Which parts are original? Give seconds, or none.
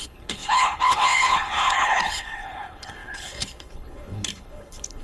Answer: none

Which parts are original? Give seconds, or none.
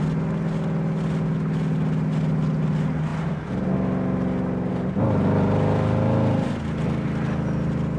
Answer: 0.0-8.0